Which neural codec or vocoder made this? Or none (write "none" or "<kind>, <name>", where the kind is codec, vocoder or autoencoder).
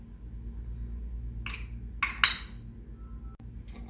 none